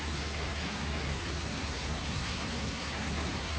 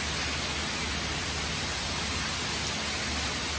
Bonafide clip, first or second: second